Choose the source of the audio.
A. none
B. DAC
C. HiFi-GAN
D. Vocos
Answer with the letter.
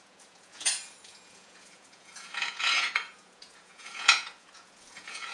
D